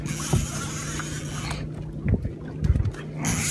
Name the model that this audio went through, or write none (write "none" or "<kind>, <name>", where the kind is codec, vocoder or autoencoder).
none